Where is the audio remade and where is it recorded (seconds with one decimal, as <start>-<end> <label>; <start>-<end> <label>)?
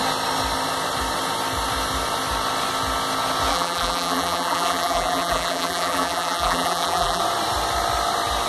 0.0-3.5 recorded; 3.5-7.2 remade; 7.2-8.5 recorded